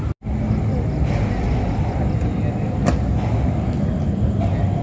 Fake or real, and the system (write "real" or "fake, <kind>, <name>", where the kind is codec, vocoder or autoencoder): real